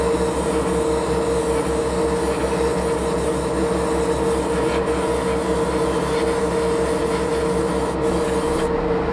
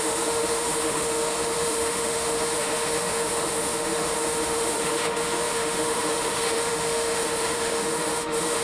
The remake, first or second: second